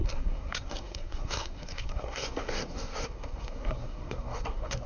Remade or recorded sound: remade